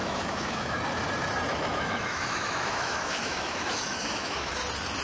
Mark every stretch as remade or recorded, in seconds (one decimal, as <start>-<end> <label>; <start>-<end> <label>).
0.0-0.8 remade; 0.8-1.5 recorded; 1.5-4.5 remade; 4.5-5.0 recorded